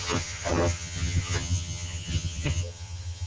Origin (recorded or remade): remade